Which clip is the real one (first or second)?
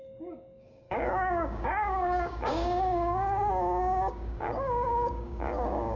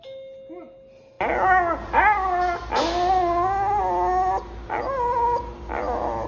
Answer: second